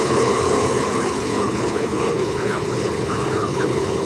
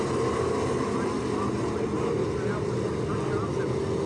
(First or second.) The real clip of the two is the second